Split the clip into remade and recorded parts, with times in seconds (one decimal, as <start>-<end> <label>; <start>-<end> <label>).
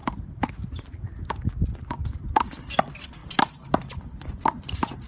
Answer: 0.0-0.5 remade; 0.5-3.2 recorded; 3.2-3.7 remade; 3.7-5.1 recorded